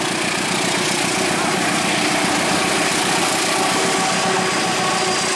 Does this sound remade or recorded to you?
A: recorded